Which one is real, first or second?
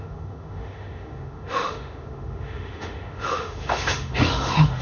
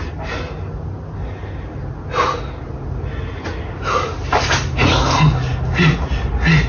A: second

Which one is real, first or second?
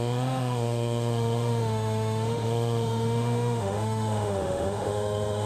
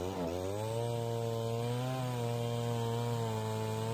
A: second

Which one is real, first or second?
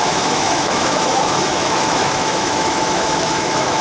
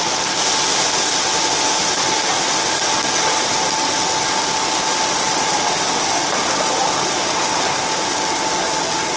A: second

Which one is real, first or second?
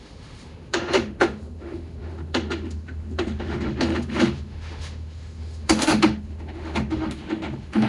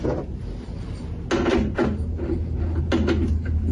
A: second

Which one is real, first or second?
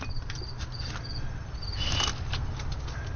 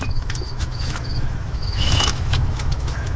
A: first